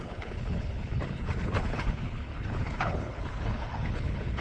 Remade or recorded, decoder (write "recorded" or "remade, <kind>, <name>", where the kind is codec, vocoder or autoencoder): remade, codec, HILCodec